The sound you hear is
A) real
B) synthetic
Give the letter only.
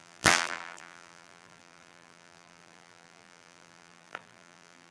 B